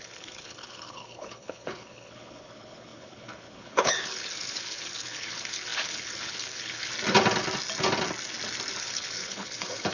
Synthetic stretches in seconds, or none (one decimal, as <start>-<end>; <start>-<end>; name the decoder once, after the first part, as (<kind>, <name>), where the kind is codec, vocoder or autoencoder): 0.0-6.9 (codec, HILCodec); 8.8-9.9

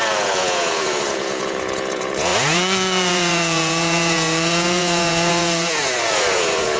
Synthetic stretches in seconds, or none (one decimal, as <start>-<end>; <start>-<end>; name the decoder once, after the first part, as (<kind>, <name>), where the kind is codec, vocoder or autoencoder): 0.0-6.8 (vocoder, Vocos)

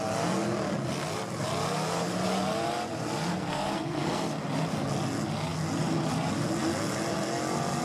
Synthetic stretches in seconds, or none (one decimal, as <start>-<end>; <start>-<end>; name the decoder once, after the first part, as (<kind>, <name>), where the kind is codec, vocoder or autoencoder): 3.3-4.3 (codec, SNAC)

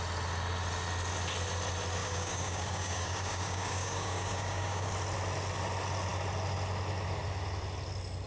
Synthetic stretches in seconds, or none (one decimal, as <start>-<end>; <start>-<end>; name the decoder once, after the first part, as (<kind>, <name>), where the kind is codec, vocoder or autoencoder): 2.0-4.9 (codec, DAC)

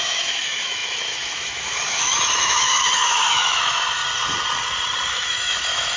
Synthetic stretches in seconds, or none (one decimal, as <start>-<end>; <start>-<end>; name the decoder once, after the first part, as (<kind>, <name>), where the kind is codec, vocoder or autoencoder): 0.0-4.0 (autoencoder, DAC-VAE); 5.1-6.0

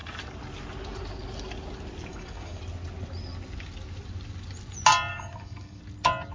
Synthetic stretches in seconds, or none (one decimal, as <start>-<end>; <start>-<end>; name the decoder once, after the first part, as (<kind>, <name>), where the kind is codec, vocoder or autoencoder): 2.1-2.6 (codec, DAC); 5.1-5.8

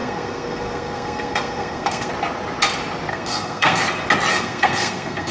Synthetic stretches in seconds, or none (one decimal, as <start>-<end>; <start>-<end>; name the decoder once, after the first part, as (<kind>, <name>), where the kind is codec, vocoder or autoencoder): 0.0-2.1 (codec, SNAC); 3.1-3.8; 4.3-5.3

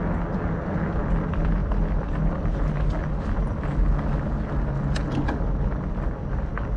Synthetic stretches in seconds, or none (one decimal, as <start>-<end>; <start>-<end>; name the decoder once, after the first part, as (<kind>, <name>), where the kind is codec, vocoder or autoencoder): none